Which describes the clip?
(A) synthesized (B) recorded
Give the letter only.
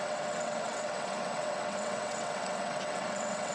A